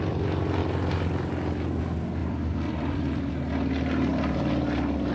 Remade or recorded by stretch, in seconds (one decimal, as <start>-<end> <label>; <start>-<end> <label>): 0.0-2.2 recorded; 2.2-3.3 remade; 3.3-4.1 recorded; 4.1-5.1 remade